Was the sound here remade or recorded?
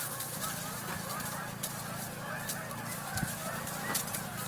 recorded